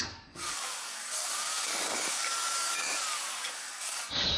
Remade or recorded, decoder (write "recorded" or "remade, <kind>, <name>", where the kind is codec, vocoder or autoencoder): remade, codec, DAC